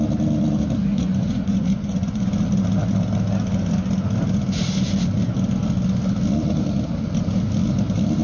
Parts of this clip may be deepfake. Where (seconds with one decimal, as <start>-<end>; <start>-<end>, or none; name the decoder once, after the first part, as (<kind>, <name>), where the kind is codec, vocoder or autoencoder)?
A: 0.9-2.3 (vocoder, Vocos)